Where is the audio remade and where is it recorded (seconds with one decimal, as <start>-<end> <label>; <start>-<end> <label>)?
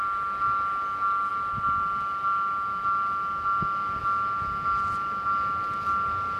0.0-6.4 recorded